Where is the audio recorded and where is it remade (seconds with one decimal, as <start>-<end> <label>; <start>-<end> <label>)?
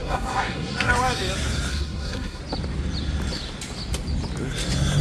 0.0-0.9 remade; 0.9-1.7 recorded; 1.7-2.4 remade; 2.4-5.0 recorded